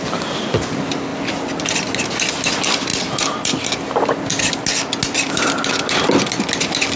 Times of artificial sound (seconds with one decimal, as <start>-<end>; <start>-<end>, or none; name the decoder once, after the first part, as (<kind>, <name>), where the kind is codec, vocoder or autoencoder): none